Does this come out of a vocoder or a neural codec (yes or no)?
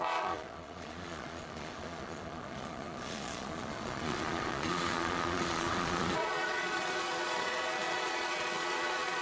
yes